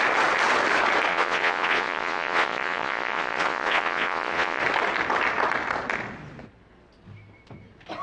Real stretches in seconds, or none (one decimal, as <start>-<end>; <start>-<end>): 0.0-1.1; 4.6-8.0